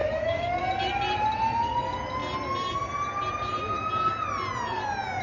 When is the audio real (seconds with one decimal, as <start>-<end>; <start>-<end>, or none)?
0.6-5.2